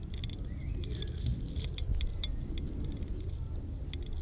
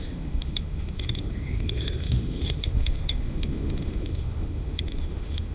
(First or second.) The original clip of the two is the first